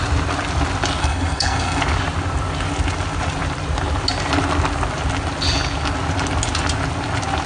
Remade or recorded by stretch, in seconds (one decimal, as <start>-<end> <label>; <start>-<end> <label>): 0.0-1.0 recorded; 1.0-1.8 remade; 1.8-7.5 recorded